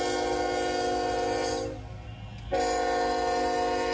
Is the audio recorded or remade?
recorded